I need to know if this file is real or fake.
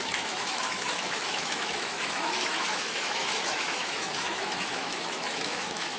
fake